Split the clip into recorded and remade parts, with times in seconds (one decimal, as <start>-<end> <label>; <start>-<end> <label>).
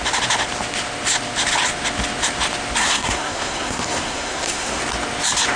0.0-2.8 recorded; 2.8-4.8 remade; 4.8-5.6 recorded